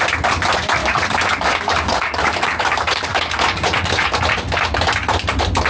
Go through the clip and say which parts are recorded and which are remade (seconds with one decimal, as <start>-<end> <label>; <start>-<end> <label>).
0.0-0.8 recorded; 0.8-4.2 remade; 4.2-5.7 recorded